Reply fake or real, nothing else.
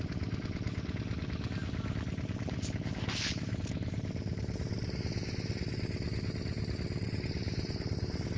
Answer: real